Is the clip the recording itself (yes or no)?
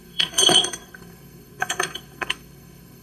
no